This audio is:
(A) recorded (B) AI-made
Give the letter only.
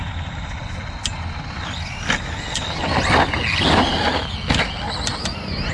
A